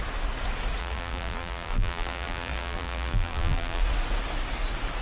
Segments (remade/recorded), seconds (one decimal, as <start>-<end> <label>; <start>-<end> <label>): 0.0-0.8 recorded; 0.8-3.8 remade; 3.8-5.0 recorded